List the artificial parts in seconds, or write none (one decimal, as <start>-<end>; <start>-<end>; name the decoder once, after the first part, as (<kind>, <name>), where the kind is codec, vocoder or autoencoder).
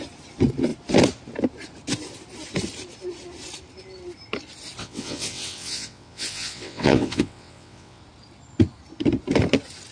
4.8-8.0 (vocoder, WaveNeXt)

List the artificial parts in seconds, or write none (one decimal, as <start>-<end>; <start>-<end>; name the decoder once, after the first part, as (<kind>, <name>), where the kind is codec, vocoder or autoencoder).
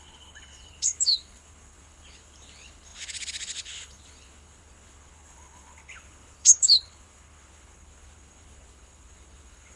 0.0-9.8 (codec, HILCodec)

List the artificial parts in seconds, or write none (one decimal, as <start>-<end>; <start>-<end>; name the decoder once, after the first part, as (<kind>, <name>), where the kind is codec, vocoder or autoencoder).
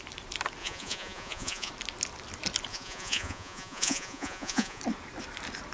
0.6-1.7 (vocoder, Vocos); 2.7-4.8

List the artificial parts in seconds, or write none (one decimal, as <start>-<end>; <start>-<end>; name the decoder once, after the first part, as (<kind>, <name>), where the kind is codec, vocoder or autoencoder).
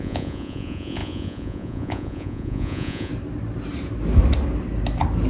0.0-3.1 (vocoder, Vocos)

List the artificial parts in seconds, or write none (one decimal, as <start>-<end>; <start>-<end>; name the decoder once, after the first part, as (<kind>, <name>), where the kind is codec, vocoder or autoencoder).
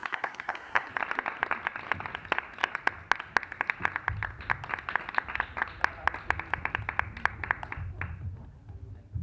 0.0-0.9 (codec, SNAC)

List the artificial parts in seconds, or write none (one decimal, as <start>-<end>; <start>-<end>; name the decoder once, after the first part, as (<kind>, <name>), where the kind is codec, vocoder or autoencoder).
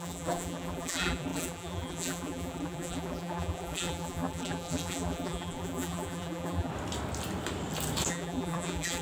0.0-6.7 (vocoder, BigVGAN v2); 8.1-9.0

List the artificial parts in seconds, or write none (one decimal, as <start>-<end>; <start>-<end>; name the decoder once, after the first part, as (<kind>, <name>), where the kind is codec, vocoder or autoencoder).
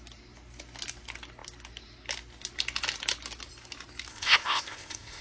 4.1-5.2 (codec, ZipCodec)